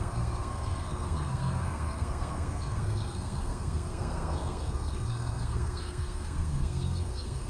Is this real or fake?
fake